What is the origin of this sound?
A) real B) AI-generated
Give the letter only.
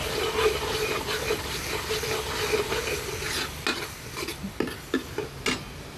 A